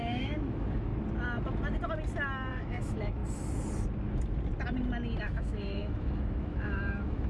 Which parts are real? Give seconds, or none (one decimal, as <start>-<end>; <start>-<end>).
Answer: 0.9-2.5; 3.2-5.2